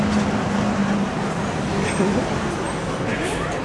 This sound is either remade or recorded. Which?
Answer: recorded